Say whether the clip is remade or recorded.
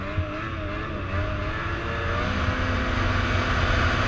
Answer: recorded